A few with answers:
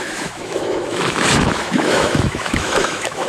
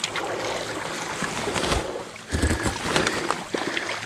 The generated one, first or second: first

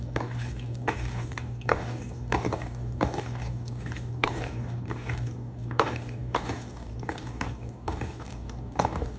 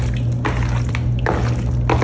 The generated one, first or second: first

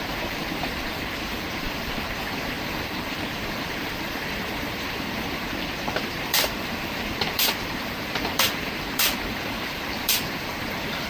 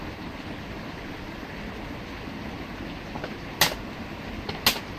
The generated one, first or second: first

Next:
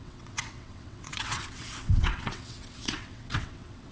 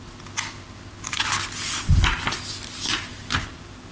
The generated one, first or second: first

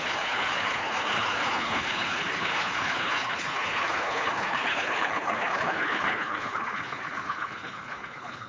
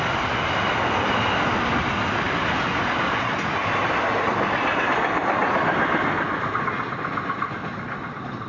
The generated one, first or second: first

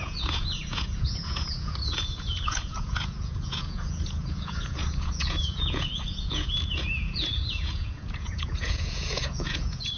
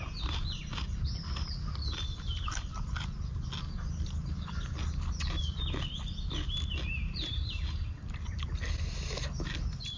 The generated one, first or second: first